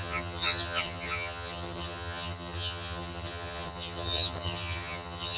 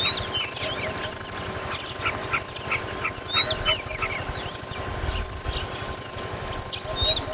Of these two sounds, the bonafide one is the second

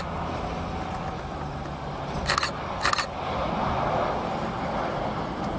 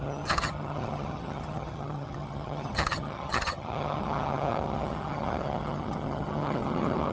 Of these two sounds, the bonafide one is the first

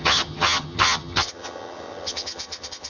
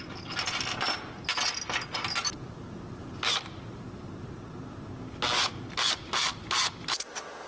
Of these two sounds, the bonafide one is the second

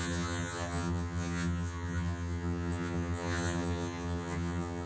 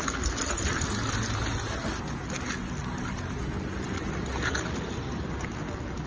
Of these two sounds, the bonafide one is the second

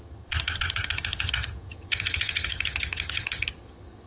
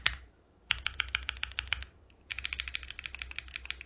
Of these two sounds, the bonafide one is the second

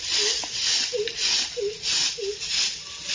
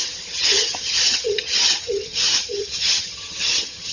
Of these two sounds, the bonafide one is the first